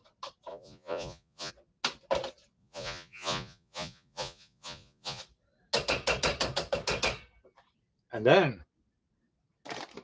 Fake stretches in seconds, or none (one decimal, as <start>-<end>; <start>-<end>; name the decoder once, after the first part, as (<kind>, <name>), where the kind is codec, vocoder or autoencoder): 0.5-1.5 (vocoder, Vocos); 2.6-5.2